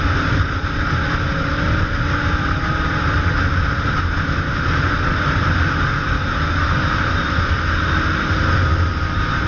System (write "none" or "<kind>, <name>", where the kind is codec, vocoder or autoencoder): none